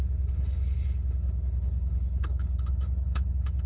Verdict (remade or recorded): remade